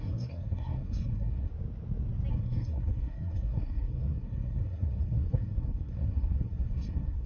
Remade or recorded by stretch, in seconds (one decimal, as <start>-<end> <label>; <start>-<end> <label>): 0.0-1.5 remade; 1.5-2.3 recorded; 2.3-7.3 remade